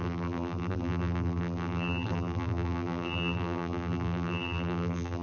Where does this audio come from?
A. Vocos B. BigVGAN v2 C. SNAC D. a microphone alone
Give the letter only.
B